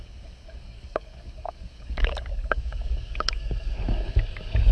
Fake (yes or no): yes